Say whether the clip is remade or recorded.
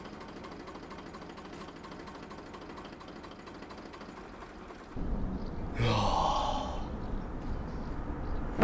recorded